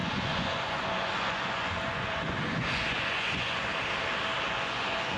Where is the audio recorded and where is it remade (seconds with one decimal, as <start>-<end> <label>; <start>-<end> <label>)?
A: 0.0-3.7 remade; 3.7-4.4 recorded; 4.4-5.2 remade